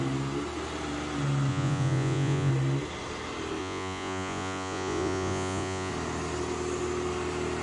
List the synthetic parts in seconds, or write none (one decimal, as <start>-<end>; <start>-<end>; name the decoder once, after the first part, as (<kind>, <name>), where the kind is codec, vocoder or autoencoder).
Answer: 1.5-2.5 (vocoder, Vocos); 3.6-5.9